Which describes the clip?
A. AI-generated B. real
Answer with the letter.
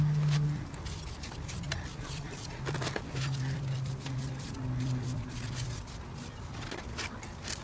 B